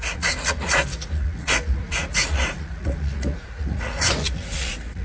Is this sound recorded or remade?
remade